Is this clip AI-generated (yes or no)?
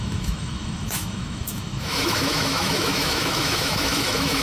yes